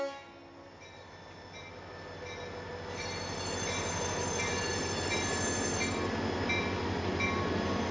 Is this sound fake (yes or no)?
no